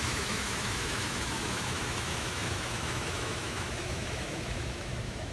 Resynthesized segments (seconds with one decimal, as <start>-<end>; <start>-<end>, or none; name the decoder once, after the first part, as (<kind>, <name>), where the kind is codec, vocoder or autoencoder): 0.0-5.3 (autoencoder, DAC-VAE)